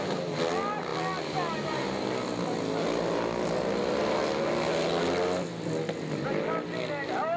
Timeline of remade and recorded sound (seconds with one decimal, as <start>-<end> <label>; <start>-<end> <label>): 0.0-7.4 recorded